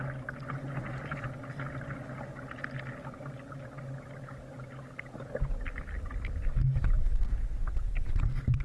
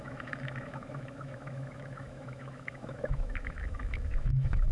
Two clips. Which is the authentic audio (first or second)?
first